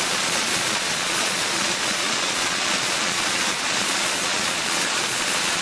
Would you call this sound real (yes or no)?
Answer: no